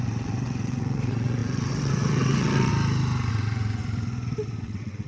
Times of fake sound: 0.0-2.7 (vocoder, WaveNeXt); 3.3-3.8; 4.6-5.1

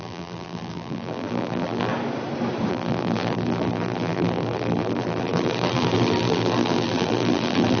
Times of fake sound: 0.0-1.9 (vocoder, BigVGAN v2); 2.7-7.8